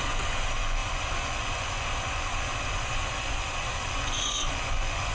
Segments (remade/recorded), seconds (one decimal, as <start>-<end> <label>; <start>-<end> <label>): 0.0-5.1 remade